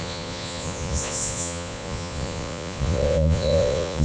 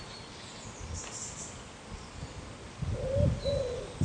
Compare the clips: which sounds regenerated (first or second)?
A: first